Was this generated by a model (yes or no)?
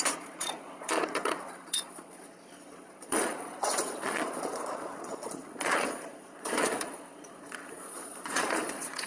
yes